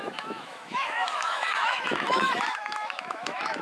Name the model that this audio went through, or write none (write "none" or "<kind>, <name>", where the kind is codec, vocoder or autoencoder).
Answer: autoencoder, DAC-VAE